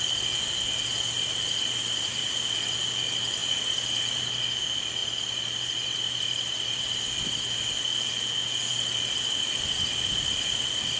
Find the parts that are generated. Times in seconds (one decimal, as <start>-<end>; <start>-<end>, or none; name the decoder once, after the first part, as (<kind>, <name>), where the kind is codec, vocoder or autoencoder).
none